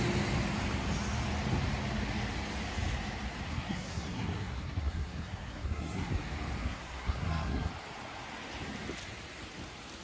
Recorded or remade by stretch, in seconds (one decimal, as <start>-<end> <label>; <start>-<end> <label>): 0.0-3.5 recorded; 3.5-6.1 remade; 6.1-6.6 recorded; 6.6-7.7 remade; 7.7-10.0 recorded